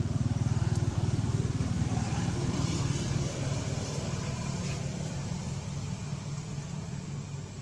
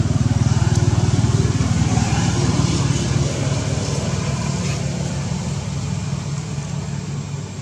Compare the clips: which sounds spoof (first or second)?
first